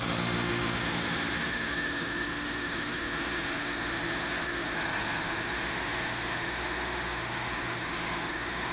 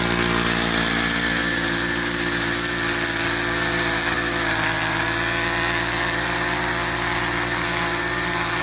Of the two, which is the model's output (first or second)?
first